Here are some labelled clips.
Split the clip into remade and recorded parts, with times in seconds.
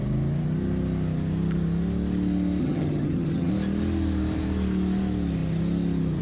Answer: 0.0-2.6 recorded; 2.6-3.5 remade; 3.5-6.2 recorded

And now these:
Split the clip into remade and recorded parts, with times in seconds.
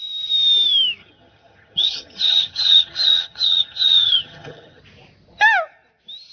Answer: 0.0-1.0 recorded; 1.0-4.8 remade; 4.8-6.3 recorded